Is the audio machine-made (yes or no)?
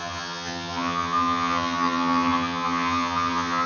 yes